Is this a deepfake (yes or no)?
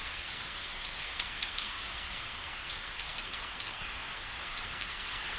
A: yes